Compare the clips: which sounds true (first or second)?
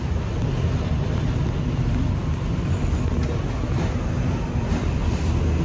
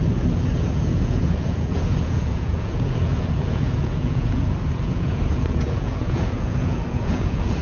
first